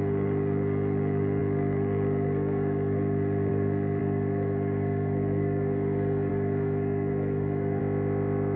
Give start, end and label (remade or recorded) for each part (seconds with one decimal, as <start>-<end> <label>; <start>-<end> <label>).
0.0-7.8 remade; 7.8-8.6 recorded